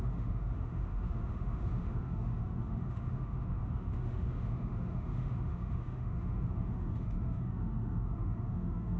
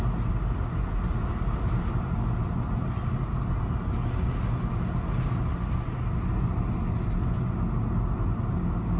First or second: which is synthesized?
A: first